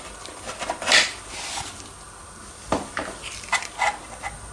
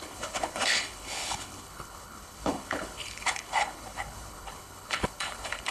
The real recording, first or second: first